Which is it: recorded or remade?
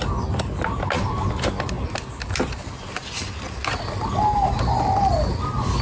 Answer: recorded